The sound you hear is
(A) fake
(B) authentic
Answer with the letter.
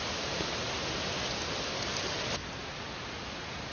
B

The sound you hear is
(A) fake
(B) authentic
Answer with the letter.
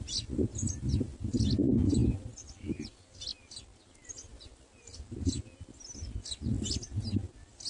B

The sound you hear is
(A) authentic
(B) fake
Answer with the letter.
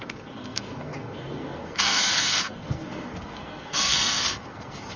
B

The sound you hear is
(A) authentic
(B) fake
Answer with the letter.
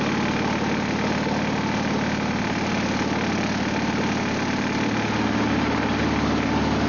A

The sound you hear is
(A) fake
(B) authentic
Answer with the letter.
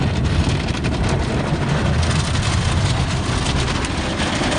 B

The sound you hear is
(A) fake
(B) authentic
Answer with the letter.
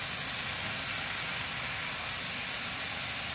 B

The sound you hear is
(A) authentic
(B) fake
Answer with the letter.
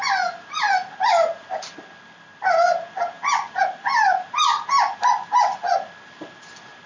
A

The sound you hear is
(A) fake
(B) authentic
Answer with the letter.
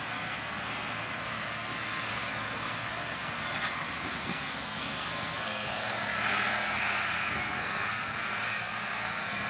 A